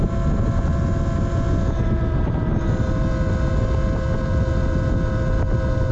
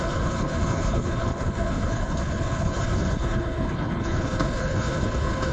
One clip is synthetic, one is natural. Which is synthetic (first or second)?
second